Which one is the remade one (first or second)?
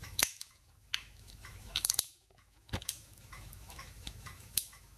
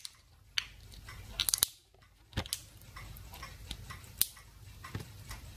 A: first